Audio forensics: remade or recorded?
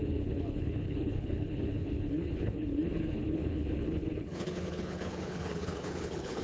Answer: remade